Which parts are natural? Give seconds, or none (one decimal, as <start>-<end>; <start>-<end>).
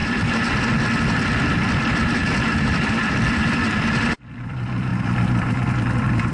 none